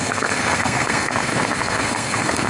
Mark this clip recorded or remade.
remade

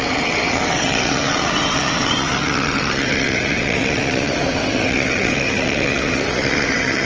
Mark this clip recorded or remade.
remade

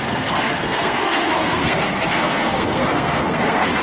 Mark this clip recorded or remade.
remade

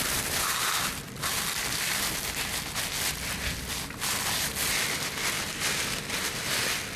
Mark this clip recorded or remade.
recorded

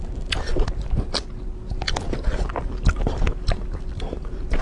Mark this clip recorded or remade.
recorded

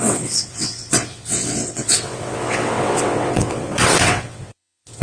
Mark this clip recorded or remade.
remade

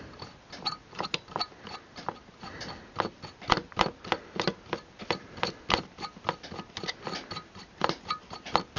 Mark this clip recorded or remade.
recorded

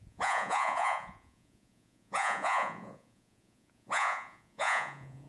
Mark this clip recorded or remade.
remade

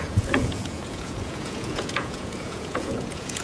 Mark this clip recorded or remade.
remade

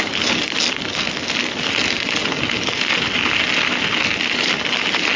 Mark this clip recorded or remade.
recorded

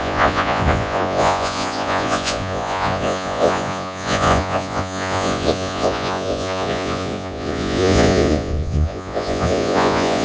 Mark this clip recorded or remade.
remade